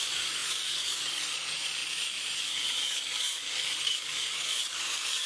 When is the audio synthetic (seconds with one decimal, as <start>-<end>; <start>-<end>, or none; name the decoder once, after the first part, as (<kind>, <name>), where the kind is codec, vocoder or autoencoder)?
0.0-5.3 (codec, DAC)